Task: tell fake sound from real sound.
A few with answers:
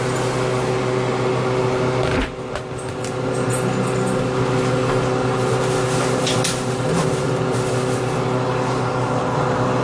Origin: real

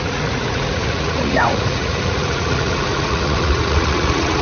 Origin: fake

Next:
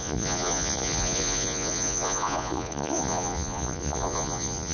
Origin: fake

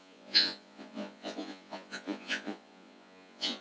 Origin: fake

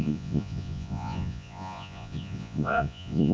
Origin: fake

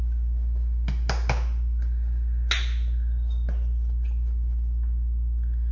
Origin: real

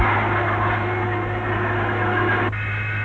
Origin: real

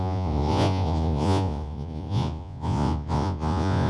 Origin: fake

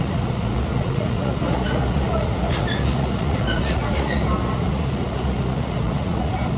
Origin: fake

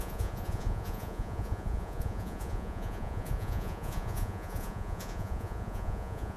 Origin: fake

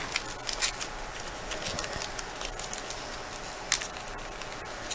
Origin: real